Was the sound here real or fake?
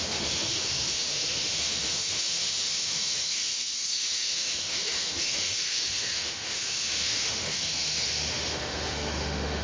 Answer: fake